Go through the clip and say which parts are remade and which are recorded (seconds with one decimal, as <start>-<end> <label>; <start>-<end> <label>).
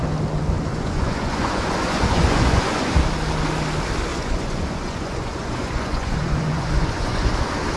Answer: 0.0-0.7 recorded; 0.7-3.0 remade; 3.0-4.1 recorded; 4.1-7.3 remade; 7.3-7.8 recorded